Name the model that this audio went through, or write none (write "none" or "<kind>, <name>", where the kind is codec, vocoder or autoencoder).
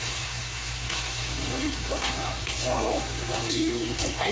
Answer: codec, SNAC